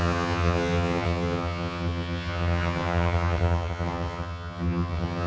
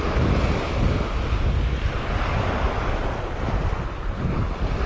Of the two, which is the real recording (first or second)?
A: second